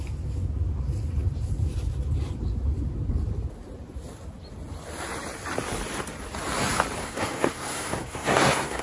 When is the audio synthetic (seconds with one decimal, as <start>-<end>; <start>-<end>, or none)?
7.0-8.8